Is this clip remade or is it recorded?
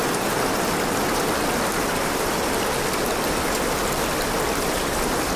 recorded